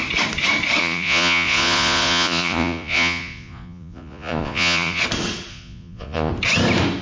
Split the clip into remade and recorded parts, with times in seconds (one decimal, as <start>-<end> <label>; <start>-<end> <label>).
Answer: 0.0-0.8 recorded; 0.8-5.0 remade; 5.0-5.5 recorded; 5.5-6.3 remade; 6.3-7.0 recorded